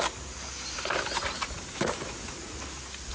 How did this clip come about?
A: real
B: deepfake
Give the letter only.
A